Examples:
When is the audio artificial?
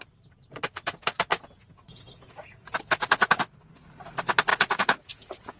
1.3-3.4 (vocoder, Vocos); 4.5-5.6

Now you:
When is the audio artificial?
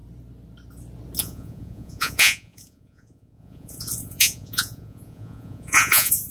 1.2-6.3 (vocoder, Vocos)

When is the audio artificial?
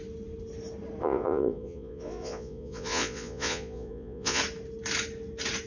1.0-4.4 (vocoder, Vocos)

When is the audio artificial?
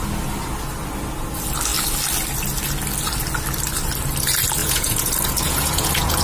4.6-6.2 (vocoder, Vocos)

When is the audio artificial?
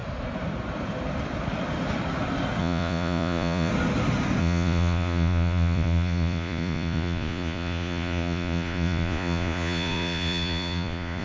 2.6-3.7 (vocoder, Vocos); 4.4-11.2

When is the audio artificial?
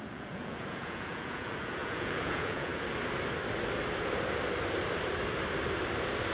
0.0-2.7 (vocoder, Vocos)